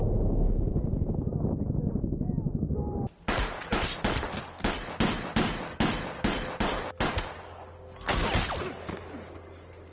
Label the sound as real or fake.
real